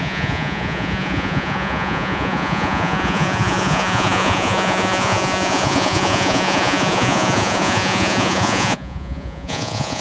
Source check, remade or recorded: remade